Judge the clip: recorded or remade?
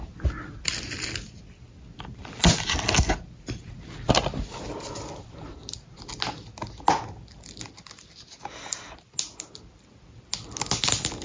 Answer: recorded